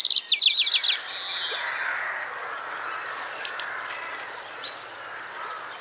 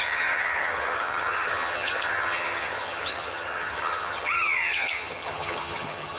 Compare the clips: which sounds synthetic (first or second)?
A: second